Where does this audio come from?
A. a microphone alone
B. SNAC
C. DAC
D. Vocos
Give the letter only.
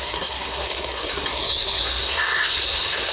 B